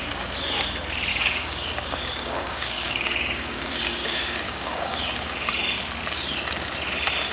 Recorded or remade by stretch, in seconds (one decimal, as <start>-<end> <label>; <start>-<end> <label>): 0.0-1.1 recorded; 1.1-5.5 remade; 5.5-7.3 recorded